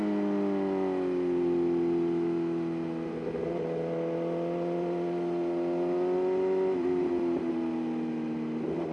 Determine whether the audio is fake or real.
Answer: real